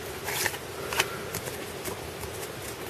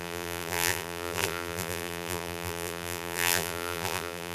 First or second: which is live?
first